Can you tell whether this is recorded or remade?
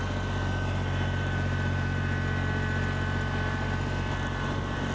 recorded